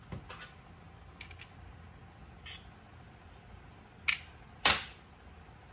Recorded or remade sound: recorded